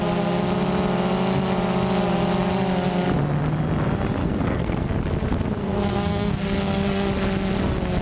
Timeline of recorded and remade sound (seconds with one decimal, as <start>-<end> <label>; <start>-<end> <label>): 0.0-4.2 recorded; 4.2-4.9 remade; 4.9-5.6 recorded; 5.6-7.1 remade; 7.1-8.0 recorded